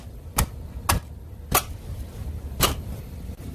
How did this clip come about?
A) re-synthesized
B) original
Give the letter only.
B